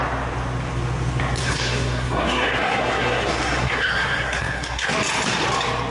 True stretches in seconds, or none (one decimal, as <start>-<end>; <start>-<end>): 0.0-1.4; 4.9-5.9